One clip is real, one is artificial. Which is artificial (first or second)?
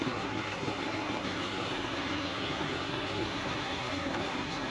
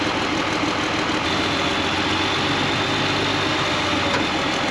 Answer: first